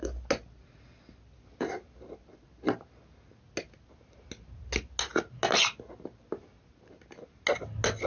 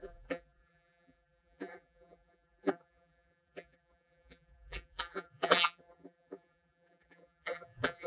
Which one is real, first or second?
first